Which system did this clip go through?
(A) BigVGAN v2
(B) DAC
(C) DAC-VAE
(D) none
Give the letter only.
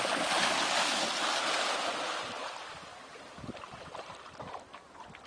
D